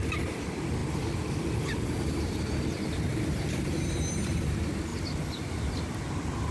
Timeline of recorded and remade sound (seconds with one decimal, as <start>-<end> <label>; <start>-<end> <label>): 0.0-6.5 recorded